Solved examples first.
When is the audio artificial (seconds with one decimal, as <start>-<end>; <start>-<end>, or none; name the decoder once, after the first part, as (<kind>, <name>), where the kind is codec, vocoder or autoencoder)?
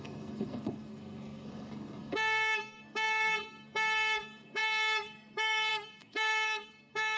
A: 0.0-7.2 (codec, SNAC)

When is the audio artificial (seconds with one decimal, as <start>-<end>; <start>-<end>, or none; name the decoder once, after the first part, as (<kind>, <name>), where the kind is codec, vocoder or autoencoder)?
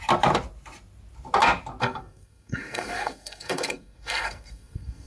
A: 1.8-5.1 (codec, SNAC)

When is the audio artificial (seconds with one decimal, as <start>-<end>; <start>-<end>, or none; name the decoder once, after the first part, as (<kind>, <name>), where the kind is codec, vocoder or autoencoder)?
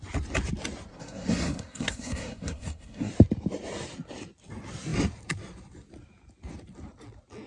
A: 0.9-3.1 (codec, SNAC)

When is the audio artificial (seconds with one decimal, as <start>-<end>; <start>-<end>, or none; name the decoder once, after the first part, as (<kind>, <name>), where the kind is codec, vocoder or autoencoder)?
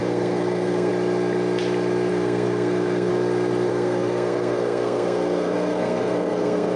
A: 0.0-0.9 (codec, SNAC); 2.1-3.1; 3.7-6.8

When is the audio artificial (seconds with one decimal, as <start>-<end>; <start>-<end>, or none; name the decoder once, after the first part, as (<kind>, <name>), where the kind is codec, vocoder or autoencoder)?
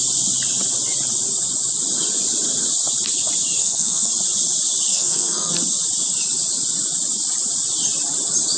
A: 3.6-4.1 (codec, SNAC); 4.9-5.5